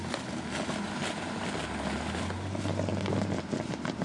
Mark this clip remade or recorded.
recorded